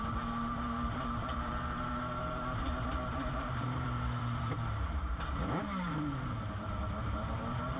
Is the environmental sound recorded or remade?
remade